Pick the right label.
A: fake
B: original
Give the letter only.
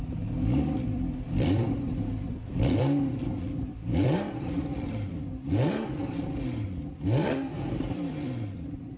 A